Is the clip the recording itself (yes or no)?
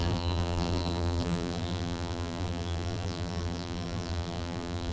no